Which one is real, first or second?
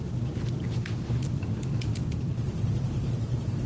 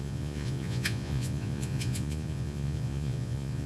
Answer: first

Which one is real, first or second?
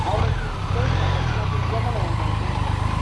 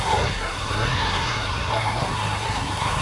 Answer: first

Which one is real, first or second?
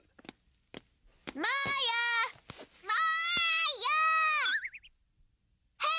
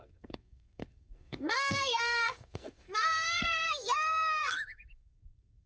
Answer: first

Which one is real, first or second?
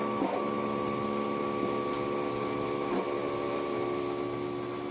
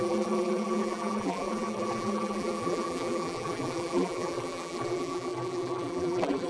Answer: first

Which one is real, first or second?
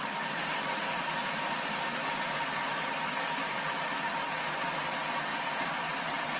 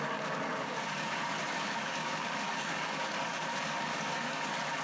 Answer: first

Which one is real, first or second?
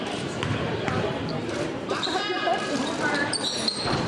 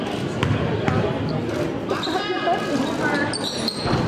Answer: second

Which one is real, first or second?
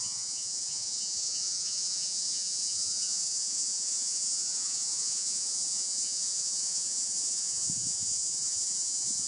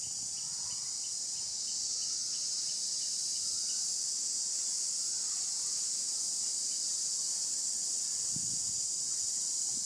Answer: second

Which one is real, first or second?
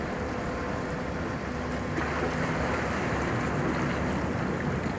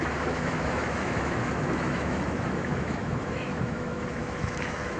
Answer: first